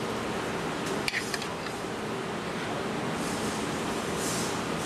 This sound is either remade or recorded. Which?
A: recorded